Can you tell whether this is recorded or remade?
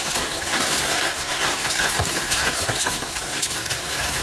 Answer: remade